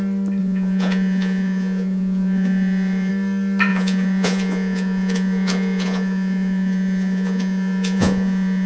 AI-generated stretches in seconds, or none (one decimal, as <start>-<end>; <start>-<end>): 0.4-3.1; 3.7-8.7